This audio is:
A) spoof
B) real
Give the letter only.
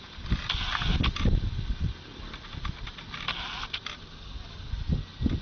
B